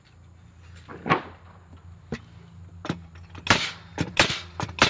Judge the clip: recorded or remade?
recorded